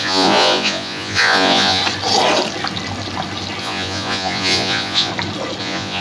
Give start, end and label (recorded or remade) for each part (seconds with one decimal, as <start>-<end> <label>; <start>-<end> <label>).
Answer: 0.0-1.8 remade; 1.8-3.6 recorded; 3.6-5.1 remade; 5.1-5.6 recorded; 5.6-6.0 remade